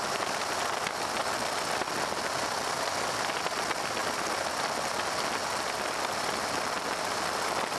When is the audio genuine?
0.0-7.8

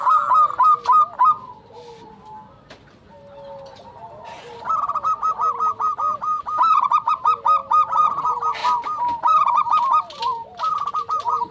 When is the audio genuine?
0.0-6.3; 7.1-7.6; 8.2-8.6; 9.2-11.5

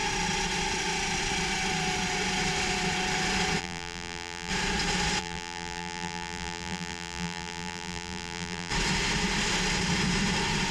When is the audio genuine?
0.0-3.6; 4.5-5.2; 8.7-10.7